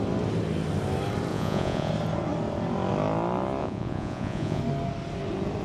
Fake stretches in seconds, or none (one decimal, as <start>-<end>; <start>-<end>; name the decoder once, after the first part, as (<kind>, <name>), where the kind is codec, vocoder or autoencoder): 1.3-1.9 (vocoder, Vocos); 3.6-4.6